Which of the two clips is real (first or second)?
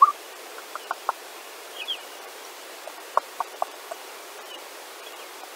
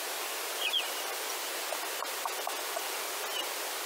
second